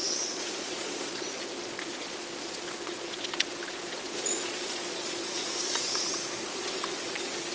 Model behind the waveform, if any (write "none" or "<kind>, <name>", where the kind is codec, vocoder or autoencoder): vocoder, Vocos